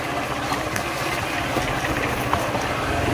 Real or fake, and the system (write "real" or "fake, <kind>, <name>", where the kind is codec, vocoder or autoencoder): real